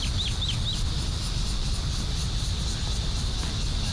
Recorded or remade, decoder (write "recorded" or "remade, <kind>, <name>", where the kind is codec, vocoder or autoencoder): recorded